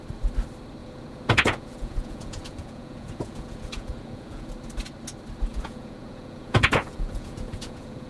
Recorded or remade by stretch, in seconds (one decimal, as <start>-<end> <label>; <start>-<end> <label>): 0.0-0.8 recorded; 0.8-4.5 remade; 4.5-5.5 recorded; 5.5-8.1 remade